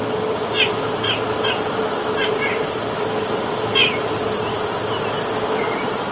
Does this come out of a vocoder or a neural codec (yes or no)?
no